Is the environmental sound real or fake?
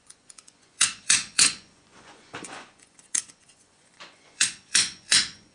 fake